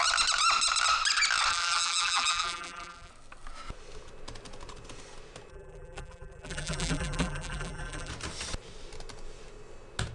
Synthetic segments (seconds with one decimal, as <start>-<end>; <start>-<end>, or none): 1.5-3.1; 5.5-8.1